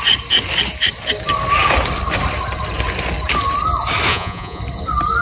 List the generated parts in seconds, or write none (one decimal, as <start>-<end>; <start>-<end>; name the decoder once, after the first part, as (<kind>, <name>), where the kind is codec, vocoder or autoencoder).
4.1-4.6 (vocoder, Vocos)

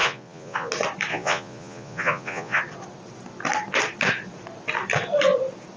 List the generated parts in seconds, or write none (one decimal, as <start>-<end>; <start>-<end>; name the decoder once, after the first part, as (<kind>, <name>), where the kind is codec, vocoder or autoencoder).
0.0-0.7 (vocoder, Vocos); 1.1-2.6

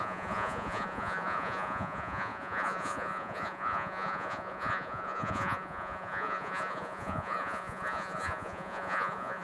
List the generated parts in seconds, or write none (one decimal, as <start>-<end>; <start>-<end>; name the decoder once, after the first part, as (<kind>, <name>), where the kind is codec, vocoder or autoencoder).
0.0-9.4 (vocoder, Vocos)

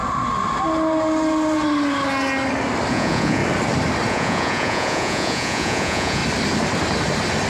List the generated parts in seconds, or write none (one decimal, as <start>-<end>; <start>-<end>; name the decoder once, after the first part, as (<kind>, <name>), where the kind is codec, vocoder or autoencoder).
2.9-3.4 (vocoder, Vocos); 4.1-6.2

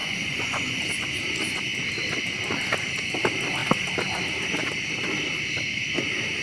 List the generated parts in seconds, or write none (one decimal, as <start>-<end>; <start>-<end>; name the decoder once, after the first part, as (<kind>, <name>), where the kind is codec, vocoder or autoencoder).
0.0-0.8 (vocoder, Vocos)

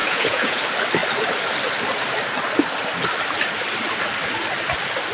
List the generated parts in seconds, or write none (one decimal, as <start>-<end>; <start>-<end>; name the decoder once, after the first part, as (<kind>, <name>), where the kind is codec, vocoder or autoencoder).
0.0-0.6 (vocoder, Vocos)